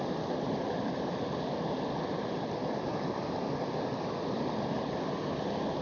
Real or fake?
real